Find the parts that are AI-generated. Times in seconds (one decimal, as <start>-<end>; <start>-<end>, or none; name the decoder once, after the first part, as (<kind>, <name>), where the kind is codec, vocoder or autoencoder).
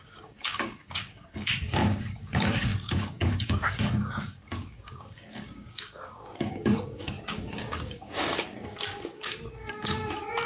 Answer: 0.0-10.5 (codec, DAC)